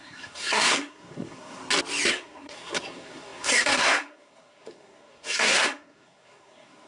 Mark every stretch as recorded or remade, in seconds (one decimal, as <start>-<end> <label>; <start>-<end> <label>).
0.0-1.6 remade; 1.6-2.1 recorded; 2.1-6.9 remade